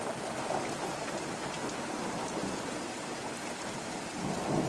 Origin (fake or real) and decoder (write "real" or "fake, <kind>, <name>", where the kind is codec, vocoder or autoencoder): real